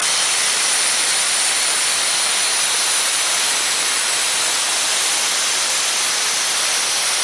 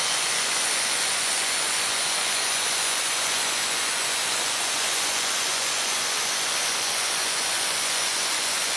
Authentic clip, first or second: first